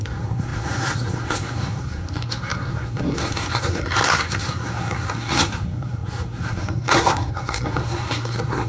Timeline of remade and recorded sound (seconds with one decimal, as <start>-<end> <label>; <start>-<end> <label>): 0.0-8.7 remade